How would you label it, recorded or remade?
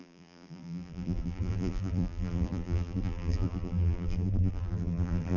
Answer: remade